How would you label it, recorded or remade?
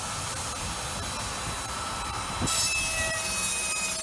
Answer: recorded